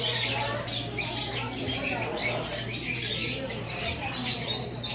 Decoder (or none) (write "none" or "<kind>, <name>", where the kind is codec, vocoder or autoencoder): vocoder, BigVGAN v2